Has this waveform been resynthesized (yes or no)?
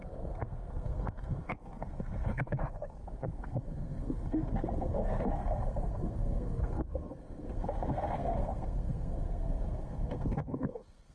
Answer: yes